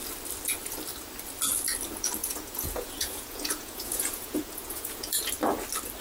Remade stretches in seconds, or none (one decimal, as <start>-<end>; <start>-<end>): 2.2-5.3